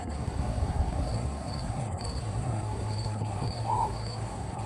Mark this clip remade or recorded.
remade